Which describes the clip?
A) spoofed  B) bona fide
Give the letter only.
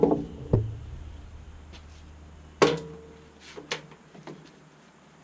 B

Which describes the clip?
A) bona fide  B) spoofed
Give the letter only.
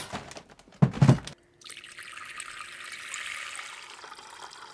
A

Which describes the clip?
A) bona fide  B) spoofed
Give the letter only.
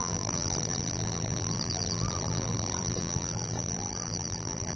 B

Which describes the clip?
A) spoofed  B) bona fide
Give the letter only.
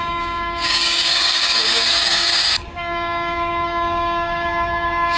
A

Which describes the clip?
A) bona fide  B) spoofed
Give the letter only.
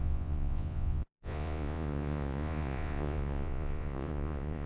B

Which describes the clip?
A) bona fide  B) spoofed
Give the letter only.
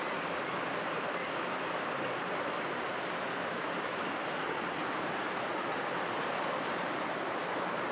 A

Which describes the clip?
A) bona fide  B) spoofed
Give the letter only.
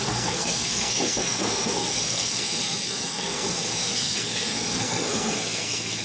B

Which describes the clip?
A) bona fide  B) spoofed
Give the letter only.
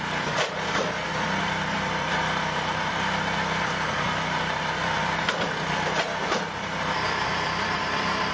B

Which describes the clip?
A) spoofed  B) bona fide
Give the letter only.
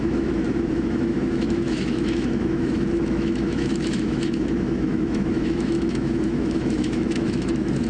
A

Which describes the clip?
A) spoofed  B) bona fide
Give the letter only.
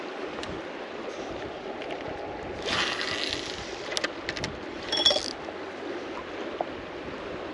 B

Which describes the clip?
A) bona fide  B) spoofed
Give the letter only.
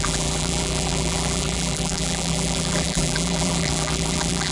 B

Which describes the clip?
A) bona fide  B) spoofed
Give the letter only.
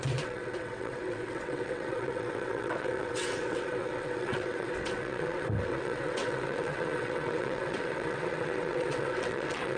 B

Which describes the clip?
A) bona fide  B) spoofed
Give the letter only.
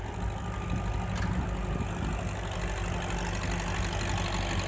A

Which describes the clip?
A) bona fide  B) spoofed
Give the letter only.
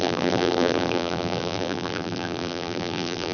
B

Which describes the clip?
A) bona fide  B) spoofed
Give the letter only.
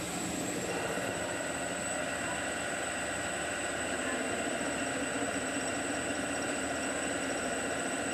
B